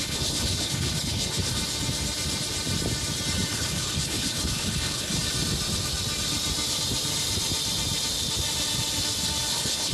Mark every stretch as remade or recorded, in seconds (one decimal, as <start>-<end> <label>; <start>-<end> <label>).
0.0-1.6 remade; 1.6-3.5 recorded; 3.5-5.2 remade; 5.2-9.5 recorded; 9.5-9.9 remade